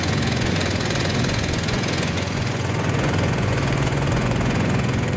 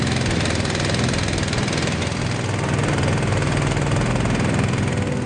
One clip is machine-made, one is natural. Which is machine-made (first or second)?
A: first